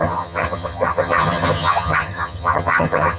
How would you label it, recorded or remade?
remade